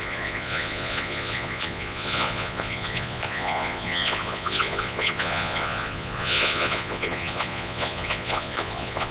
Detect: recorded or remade remade